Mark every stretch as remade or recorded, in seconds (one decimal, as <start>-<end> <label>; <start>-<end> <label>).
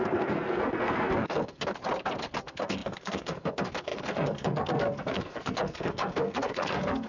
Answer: 0.0-1.8 remade; 1.8-2.4 recorded; 2.4-7.1 remade